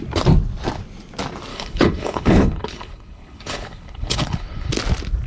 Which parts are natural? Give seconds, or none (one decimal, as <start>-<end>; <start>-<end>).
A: 0.0-1.5; 4.7-5.3